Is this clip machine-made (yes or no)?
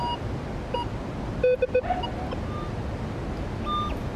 no